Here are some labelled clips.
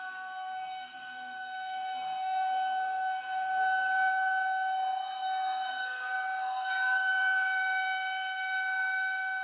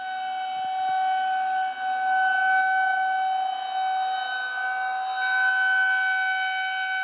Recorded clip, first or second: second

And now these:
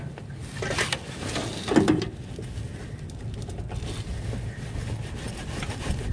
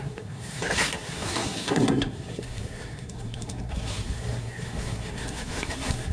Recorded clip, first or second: first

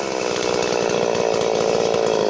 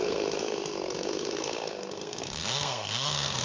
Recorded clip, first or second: first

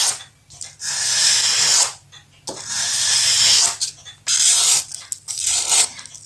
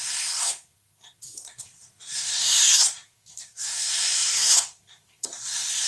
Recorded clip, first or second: first